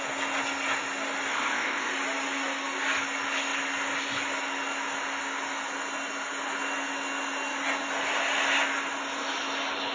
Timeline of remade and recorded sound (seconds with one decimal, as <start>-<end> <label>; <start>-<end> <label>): 0.0-1.3 recorded; 1.3-1.9 remade; 1.9-9.9 recorded